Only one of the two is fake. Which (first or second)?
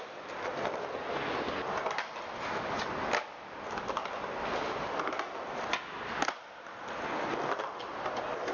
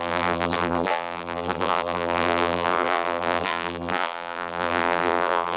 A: second